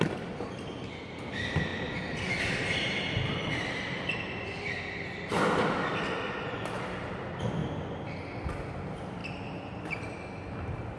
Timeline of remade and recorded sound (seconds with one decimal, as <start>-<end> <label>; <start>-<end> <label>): 0.0-11.0 recorded